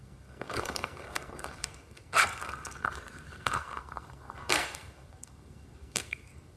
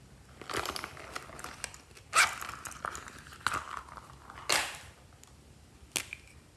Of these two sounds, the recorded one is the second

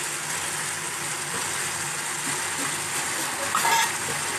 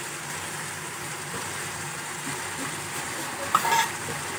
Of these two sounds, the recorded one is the first